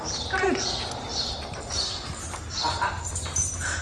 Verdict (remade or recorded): remade